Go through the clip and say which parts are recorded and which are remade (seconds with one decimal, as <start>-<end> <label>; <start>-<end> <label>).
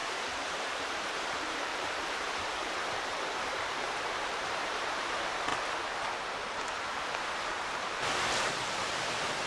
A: 0.0-5.0 remade; 5.0-9.5 recorded